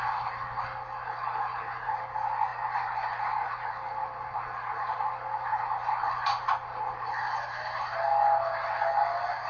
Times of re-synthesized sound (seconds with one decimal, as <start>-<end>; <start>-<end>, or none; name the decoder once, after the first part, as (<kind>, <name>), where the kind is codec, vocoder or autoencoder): none